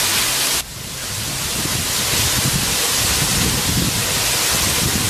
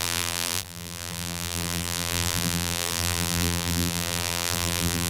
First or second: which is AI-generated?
second